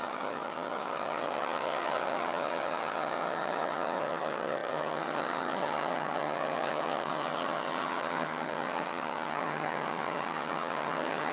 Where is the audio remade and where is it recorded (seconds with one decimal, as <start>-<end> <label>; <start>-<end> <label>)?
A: 0.0-11.3 remade